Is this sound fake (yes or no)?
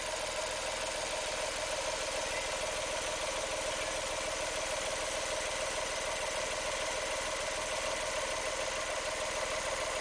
no